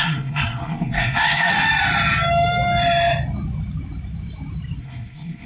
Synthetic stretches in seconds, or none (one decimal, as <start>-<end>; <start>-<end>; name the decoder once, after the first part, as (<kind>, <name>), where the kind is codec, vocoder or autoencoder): 0.0-1.5 (codec, SNAC); 4.8-5.5